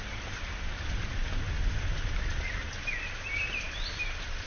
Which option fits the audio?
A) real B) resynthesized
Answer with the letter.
A